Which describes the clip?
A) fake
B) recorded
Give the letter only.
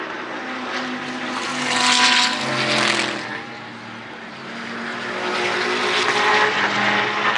B